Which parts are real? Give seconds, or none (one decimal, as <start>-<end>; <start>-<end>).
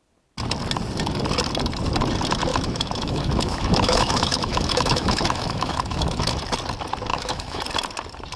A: 0.0-2.5; 6.4-7.1; 7.6-8.4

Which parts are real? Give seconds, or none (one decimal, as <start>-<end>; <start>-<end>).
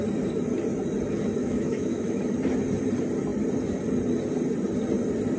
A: 0.0-1.4; 2.2-5.4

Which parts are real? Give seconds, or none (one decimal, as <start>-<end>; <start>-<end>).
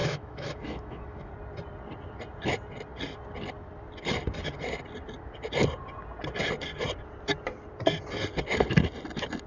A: 1.3-9.5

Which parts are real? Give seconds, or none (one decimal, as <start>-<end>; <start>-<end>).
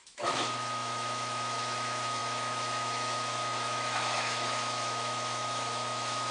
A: none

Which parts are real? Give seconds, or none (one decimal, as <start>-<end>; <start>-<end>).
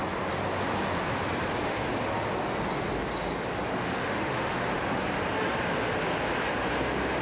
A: 0.0-3.8; 4.7-7.2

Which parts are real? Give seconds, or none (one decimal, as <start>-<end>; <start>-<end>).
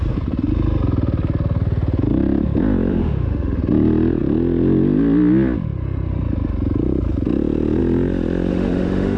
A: 0.0-2.9; 3.6-8.5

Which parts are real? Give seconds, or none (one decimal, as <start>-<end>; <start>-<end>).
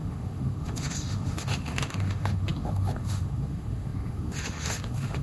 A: none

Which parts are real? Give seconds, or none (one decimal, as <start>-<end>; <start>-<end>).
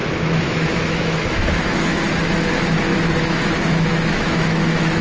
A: 2.0-2.9